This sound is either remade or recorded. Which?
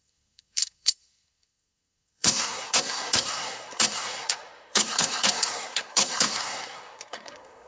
remade